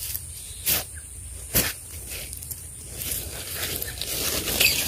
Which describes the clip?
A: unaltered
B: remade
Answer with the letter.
B